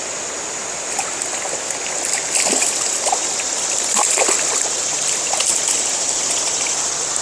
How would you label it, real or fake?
real